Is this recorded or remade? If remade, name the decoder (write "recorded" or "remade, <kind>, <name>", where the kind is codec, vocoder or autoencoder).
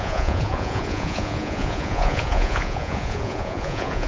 remade, vocoder, Vocos